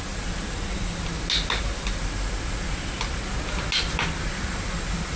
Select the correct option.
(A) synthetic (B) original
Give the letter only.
B